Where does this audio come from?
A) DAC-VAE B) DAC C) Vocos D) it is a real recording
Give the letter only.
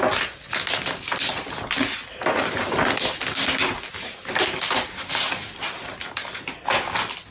D